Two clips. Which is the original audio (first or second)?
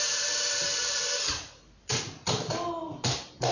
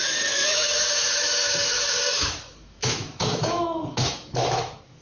first